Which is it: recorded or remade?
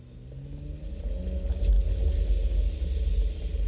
recorded